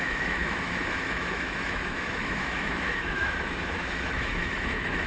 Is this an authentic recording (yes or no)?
no